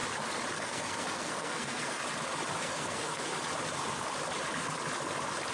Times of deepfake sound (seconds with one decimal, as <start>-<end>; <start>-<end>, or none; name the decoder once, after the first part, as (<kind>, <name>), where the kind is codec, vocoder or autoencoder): 0.5-2.0 (codec, SNAC); 2.6-3.3